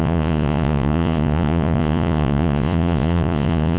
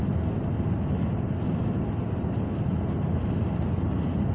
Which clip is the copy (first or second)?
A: first